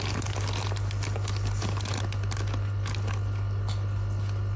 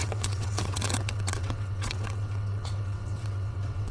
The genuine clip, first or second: first